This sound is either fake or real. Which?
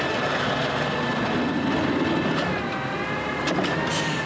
real